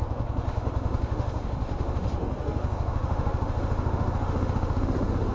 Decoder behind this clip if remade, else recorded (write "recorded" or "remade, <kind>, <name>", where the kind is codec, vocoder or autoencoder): remade, autoencoder, DAC-VAE